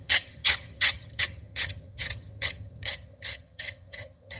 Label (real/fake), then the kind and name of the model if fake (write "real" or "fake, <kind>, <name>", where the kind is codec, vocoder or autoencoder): fake, vocoder, HiFi-GAN